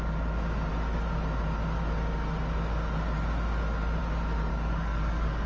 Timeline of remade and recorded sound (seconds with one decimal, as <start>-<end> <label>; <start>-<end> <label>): 0.0-4.5 recorded; 4.5-5.5 remade